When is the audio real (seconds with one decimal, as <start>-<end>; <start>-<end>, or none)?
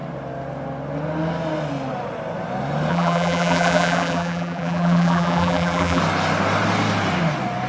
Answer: 0.0-2.9; 6.0-7.7